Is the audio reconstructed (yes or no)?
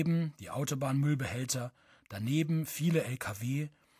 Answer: no